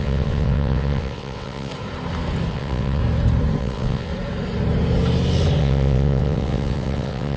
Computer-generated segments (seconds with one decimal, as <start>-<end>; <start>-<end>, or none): 0.0-1.7; 2.5-3.0; 3.6-4.1; 5.6-7.4